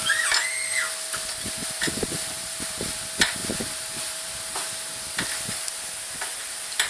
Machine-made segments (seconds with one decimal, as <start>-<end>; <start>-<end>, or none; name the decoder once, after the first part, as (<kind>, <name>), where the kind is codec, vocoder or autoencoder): 1.6-3.0 (vocoder, BigVGAN v2); 3.4-4.4